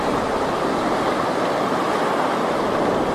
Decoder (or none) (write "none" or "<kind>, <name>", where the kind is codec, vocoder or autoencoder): none